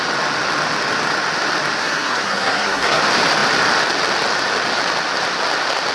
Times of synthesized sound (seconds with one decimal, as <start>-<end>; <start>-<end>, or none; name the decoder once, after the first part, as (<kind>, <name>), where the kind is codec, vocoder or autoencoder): 1.8-3.0 (codec, SNAC)